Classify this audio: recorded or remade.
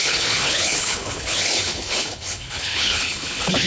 remade